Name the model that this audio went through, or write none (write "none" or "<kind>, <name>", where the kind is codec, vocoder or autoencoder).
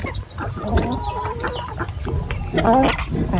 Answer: none